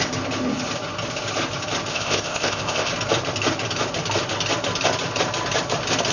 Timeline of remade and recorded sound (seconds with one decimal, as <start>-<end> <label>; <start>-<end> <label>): 0.0-1.9 recorded; 1.9-2.9 remade; 2.9-6.1 recorded